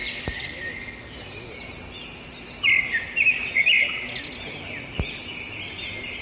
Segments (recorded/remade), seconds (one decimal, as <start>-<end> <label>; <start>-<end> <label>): 0.0-6.2 recorded